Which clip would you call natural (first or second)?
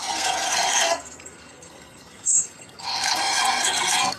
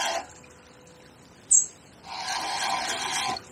second